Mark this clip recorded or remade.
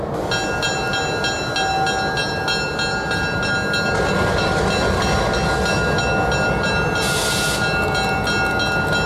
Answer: recorded